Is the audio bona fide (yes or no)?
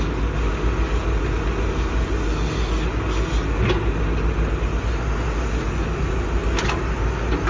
yes